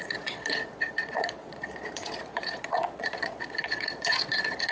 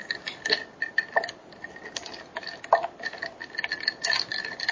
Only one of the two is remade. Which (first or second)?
first